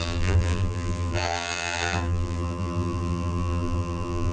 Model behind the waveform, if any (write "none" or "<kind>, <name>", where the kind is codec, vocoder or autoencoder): vocoder, BigVGAN v2